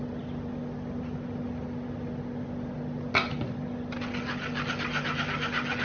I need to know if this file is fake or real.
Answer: real